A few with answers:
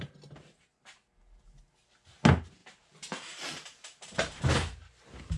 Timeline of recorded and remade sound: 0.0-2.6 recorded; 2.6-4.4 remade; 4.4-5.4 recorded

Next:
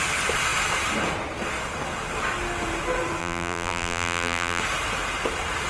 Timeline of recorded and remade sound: 0.0-3.2 recorded; 3.2-4.6 remade; 4.6-5.7 recorded

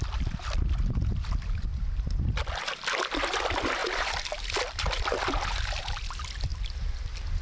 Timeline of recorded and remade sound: 0.0-3.8 recorded; 3.8-5.8 remade; 5.8-7.4 recorded